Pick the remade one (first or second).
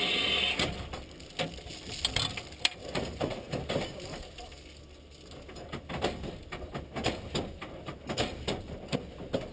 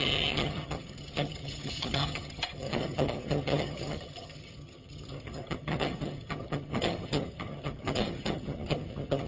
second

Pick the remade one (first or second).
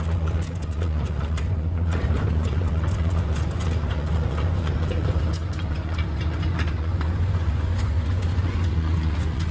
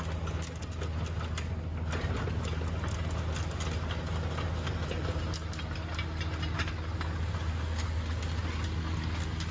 first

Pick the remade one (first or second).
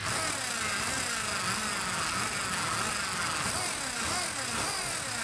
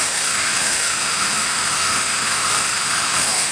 second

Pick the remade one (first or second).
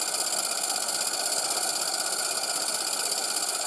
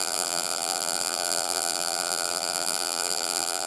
second